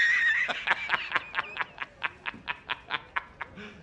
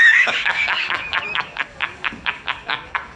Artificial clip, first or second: second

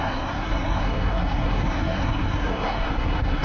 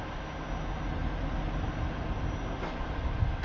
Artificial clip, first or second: first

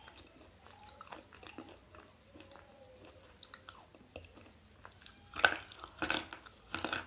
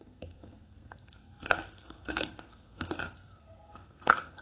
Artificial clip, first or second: second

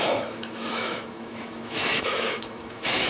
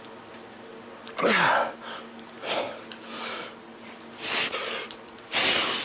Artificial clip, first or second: first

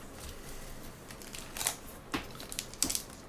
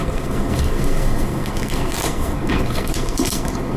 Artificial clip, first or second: second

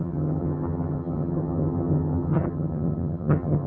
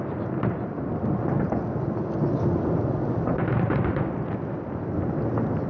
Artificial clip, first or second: first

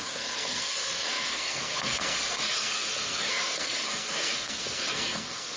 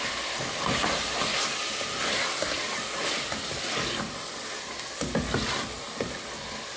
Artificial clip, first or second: first